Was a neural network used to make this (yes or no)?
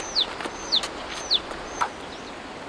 no